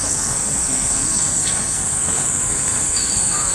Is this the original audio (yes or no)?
no